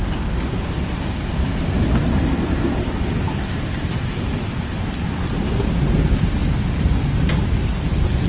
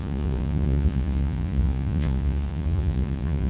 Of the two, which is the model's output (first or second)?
second